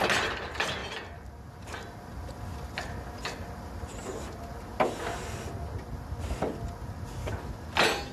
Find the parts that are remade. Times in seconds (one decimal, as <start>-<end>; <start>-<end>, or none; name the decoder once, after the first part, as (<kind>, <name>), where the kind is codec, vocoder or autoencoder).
none